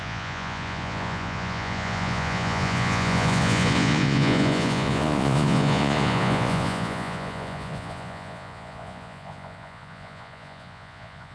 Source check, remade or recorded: remade